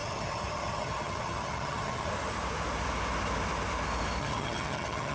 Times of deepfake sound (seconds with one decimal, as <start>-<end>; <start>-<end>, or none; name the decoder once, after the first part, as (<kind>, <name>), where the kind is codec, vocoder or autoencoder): 0.0-2.1 (vocoder, HiFi-GAN); 4.2-5.1